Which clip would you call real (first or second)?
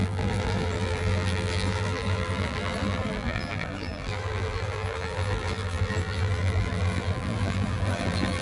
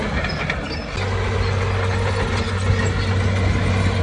second